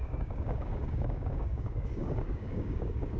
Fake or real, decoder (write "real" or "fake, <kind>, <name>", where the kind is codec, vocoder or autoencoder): fake, codec, DAC